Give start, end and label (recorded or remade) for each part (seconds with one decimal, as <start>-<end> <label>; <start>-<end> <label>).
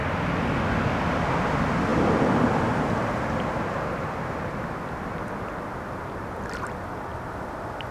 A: 0.0-7.9 recorded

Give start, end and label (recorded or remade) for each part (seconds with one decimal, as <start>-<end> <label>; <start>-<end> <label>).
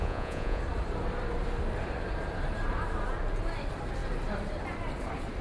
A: 0.0-0.6 remade; 0.6-5.4 recorded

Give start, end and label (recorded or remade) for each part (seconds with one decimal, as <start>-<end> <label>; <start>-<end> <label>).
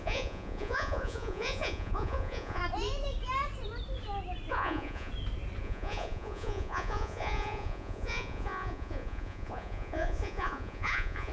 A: 0.0-2.6 remade; 2.6-4.5 recorded; 4.5-5.1 remade; 5.1-5.6 recorded; 5.6-11.3 remade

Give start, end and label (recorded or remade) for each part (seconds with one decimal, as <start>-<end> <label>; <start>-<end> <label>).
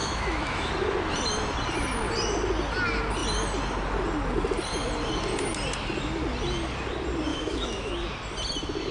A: 0.0-0.7 remade; 0.7-7.3 recorded; 7.3-7.9 remade; 7.9-8.9 recorded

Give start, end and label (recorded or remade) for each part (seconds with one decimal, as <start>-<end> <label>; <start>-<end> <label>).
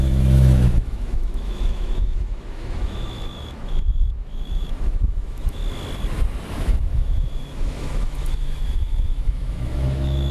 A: 0.0-5.6 remade; 5.6-6.5 recorded; 6.5-10.3 remade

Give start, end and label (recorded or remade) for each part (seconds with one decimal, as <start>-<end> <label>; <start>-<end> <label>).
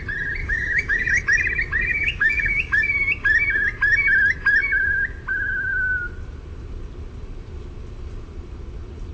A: 0.0-0.4 recorded; 0.4-1.1 remade; 1.1-1.9 recorded; 1.9-2.9 remade; 2.9-9.1 recorded